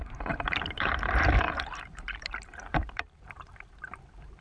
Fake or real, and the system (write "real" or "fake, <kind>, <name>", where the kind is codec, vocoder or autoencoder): fake, vocoder, BigVGAN v2